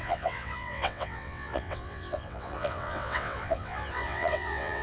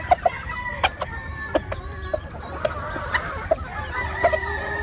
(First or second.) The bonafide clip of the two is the second